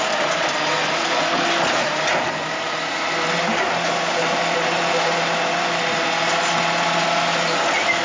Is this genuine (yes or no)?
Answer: yes